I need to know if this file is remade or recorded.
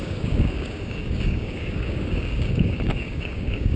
remade